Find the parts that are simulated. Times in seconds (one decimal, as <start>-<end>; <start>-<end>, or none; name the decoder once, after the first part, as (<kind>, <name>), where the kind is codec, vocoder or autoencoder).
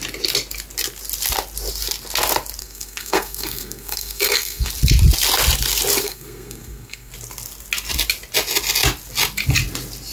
2.6-4.7 (codec, SNAC); 6.0-7.1